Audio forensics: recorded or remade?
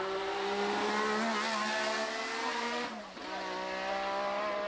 recorded